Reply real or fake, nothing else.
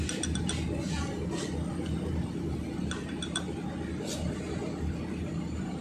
real